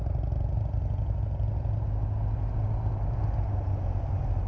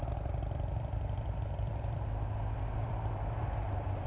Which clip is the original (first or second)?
first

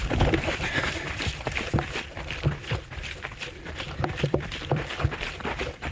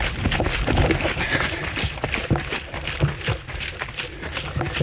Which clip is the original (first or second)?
second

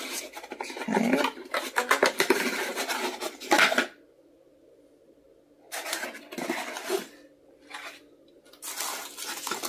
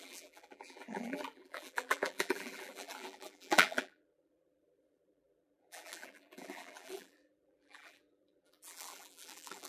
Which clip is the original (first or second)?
first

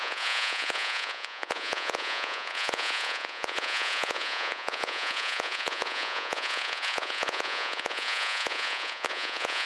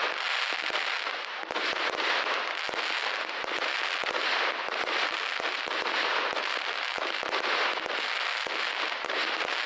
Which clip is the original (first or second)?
second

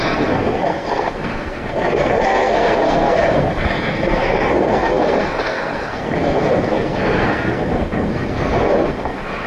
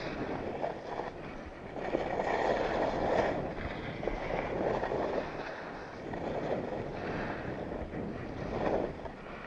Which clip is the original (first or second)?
second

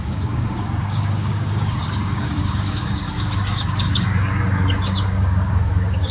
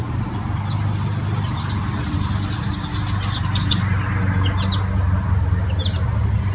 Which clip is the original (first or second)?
second